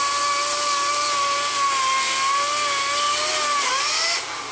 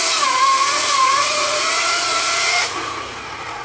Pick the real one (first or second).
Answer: first